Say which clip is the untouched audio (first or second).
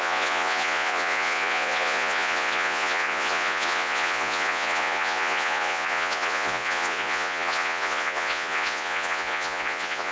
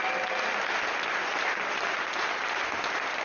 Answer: second